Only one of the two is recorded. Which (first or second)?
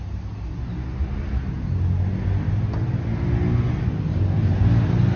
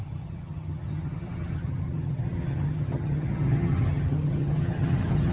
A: first